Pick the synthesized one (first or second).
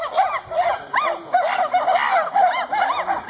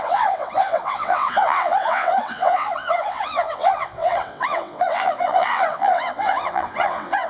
second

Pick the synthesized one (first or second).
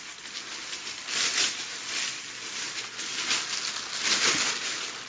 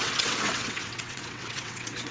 second